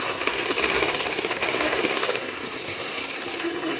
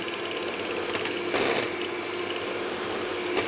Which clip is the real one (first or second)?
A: second